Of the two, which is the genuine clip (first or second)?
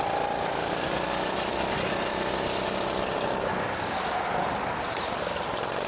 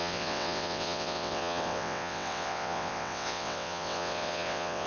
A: first